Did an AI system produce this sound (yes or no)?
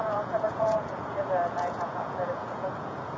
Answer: yes